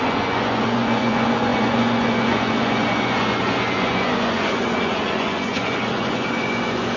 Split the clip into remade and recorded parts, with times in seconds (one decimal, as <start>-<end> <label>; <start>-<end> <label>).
0.0-7.0 remade

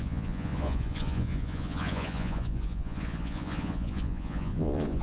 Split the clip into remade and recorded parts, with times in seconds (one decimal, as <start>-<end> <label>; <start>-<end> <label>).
0.0-5.0 remade

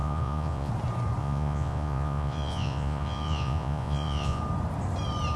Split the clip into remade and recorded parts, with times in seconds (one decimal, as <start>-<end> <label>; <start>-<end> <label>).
0.0-0.7 remade; 0.7-1.2 recorded; 1.2-4.4 remade; 4.4-5.4 recorded

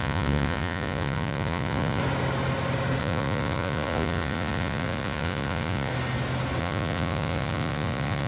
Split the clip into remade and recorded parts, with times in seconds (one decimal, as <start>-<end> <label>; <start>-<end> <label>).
0.0-2.0 remade; 2.0-3.0 recorded; 3.0-5.9 remade; 5.9-6.6 recorded; 6.6-8.3 remade